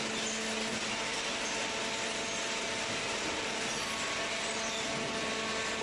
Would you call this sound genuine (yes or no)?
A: yes